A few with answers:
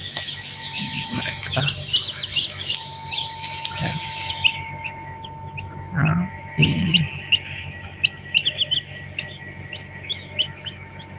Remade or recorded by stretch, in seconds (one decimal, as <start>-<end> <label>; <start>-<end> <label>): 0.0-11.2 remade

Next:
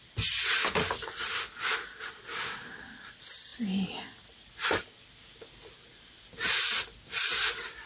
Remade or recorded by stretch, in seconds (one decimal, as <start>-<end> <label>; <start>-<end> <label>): 0.0-7.9 recorded

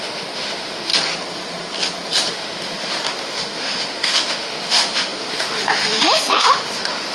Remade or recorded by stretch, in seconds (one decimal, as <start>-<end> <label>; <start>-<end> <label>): 0.0-0.9 remade; 0.9-2.3 recorded; 2.3-7.1 remade